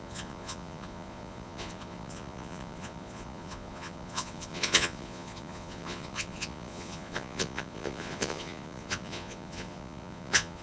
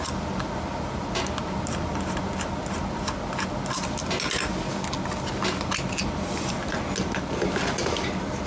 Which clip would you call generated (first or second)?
first